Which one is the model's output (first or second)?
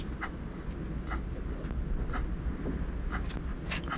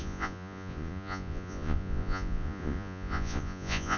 second